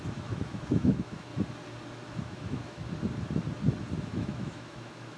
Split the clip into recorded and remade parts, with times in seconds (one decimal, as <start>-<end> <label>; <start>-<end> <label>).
0.0-1.3 remade; 1.3-2.2 recorded; 2.2-2.8 remade; 2.8-4.0 recorded; 4.0-5.2 remade